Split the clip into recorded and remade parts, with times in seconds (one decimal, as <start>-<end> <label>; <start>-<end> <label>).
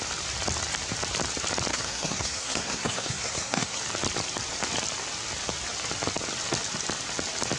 0.0-1.7 recorded; 1.7-3.8 remade; 3.8-7.6 recorded